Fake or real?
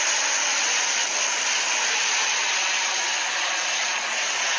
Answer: real